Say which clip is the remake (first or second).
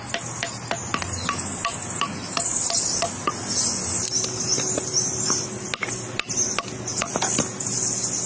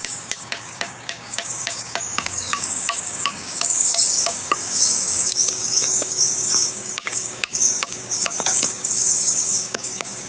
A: second